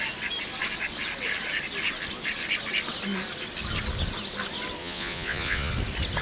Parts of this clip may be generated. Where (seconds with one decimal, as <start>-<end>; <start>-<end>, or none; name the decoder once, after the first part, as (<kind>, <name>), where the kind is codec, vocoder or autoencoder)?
4.8-5.7 (vocoder, Vocos)